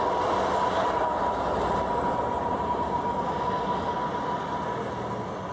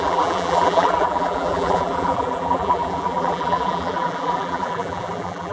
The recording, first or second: first